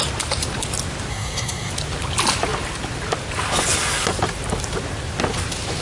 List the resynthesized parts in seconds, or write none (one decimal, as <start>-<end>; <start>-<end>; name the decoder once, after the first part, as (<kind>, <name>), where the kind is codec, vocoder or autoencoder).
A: 1.1-1.7 (codec, SNAC)